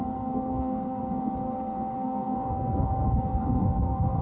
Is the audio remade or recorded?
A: remade